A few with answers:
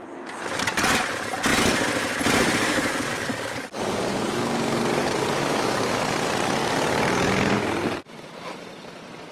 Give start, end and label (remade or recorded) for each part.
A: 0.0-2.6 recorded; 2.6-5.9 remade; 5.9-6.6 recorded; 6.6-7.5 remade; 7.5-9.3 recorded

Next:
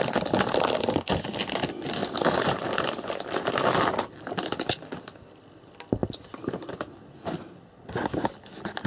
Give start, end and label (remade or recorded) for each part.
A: 0.0-8.9 recorded

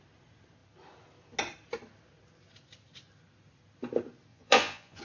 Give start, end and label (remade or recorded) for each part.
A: 0.0-4.3 recorded; 4.3-5.0 remade

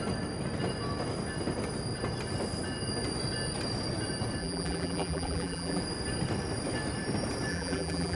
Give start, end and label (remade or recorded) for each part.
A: 0.0-4.4 recorded; 4.4-5.8 remade; 5.8-7.5 recorded; 7.5-8.2 remade

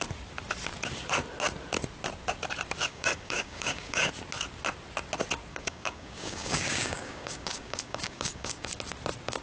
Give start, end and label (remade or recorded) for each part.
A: 0.0-2.9 recorded; 2.9-4.1 remade; 4.1-5.5 recorded; 5.5-8.8 remade; 8.8-9.4 recorded

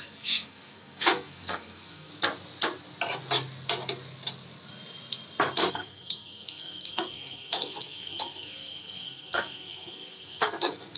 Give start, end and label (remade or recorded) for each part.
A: 0.0-2.1 remade; 2.1-5.7 recorded; 5.7-11.0 remade